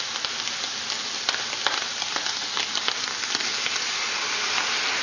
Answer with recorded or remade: recorded